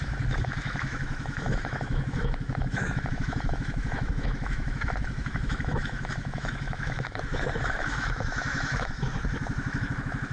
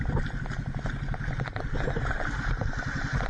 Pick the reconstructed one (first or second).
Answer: first